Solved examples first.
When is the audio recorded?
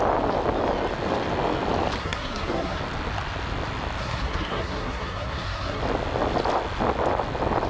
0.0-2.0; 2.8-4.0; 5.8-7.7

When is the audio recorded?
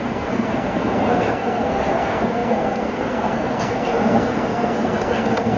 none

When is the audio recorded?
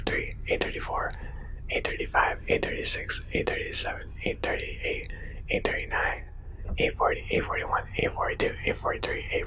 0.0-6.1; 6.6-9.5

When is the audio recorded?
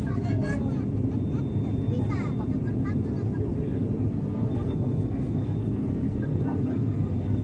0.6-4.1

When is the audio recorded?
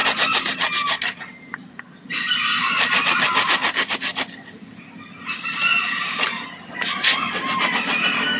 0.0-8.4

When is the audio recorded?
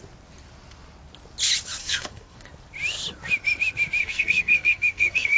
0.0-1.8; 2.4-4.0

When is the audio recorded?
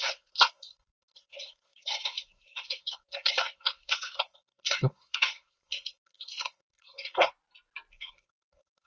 7.3-7.9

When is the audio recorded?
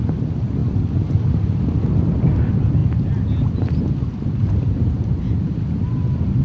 0.0-6.4